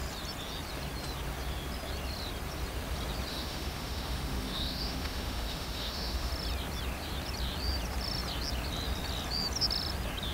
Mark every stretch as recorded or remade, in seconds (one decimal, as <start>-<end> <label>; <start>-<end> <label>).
0.0-3.3 recorded; 3.3-6.3 remade; 6.3-10.3 recorded